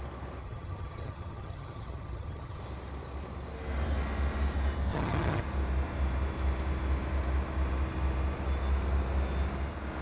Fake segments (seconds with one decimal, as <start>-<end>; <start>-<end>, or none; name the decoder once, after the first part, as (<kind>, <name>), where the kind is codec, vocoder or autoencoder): 0.4-2.6 (vocoder, HiFi-GAN); 4.9-5.4